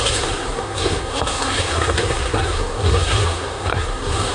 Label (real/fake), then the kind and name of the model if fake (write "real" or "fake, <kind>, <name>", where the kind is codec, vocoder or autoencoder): fake, codec, SNAC